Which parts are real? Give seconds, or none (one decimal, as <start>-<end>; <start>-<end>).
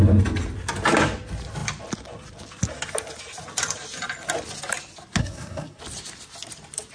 0.0-5.2; 5.8-6.9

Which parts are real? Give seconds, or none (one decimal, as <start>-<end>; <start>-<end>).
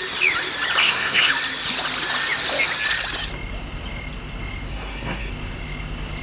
0.0-0.8; 1.3-4.7; 5.3-6.2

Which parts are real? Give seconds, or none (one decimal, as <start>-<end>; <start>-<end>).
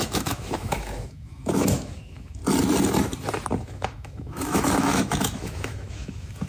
2.4-3.6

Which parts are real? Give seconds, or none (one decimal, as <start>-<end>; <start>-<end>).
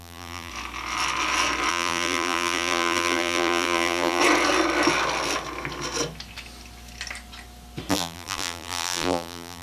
0.5-1.7; 4.2-7.9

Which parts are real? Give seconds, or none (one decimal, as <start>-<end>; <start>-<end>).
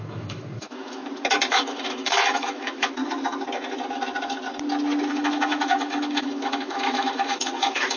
1.0-1.5; 3.0-5.1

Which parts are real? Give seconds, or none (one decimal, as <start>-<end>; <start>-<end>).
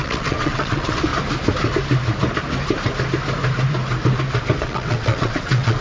1.1-4.6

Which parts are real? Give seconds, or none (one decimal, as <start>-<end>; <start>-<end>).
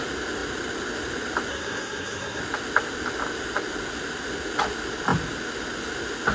0.0-1.5; 2.4-6.3